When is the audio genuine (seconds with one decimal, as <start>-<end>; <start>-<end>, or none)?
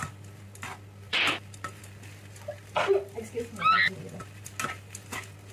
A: 0.0-1.1; 1.8-5.5